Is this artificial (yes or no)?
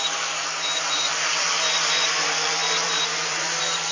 yes